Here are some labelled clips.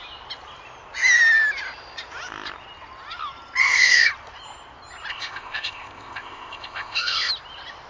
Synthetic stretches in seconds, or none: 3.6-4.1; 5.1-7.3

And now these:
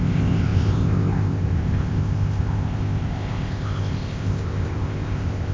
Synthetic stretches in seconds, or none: 0.0-5.5

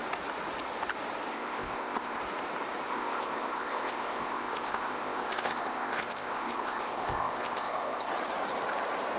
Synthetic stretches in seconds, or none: 1.3-2.2; 2.9-8.1

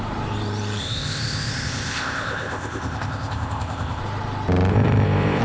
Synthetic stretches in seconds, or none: 0.8-4.0; 4.7-5.4

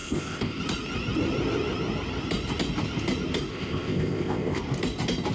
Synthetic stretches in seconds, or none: 0.0-0.6; 3.5-4.6